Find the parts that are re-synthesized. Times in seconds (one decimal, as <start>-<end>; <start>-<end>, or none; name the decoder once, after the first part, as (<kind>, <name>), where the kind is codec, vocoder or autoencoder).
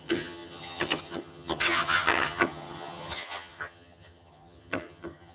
0.0-5.3 (vocoder, HiFi-GAN)